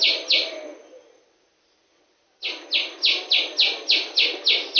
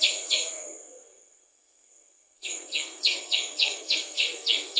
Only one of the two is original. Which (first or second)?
first